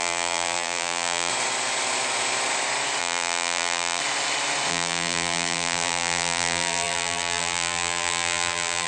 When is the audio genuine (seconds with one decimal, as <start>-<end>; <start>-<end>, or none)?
1.3-3.0; 4.0-4.7